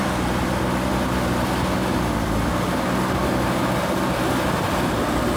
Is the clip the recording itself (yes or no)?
yes